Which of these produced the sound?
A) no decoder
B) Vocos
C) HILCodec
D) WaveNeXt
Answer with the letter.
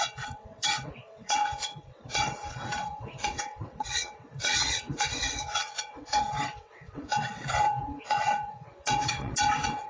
D